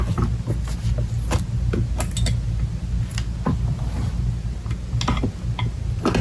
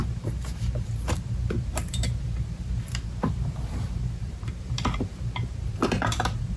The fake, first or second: second